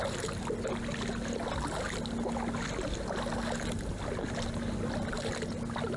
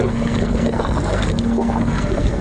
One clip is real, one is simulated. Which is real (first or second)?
first